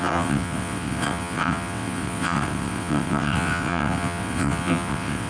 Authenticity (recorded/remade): remade